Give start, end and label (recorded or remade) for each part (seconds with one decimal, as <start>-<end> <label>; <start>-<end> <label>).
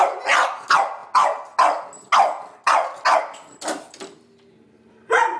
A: 0.0-5.4 recorded